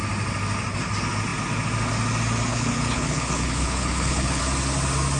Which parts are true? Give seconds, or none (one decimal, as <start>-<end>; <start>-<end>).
0.0-2.5; 4.4-5.2